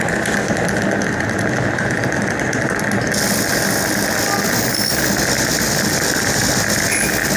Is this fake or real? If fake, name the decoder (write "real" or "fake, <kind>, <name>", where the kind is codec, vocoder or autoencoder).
real